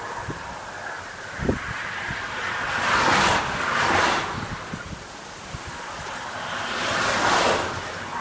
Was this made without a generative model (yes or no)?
yes